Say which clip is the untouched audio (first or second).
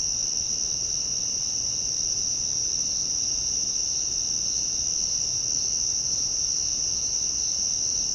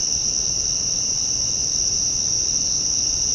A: first